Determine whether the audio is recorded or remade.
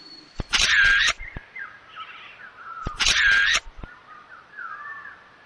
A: remade